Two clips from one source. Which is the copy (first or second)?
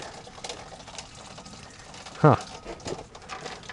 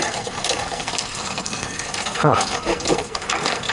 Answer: second